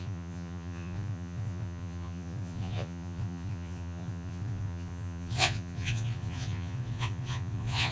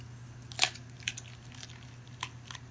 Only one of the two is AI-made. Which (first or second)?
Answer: first